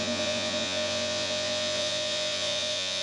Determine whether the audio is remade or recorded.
remade